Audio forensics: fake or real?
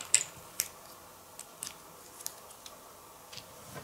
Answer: real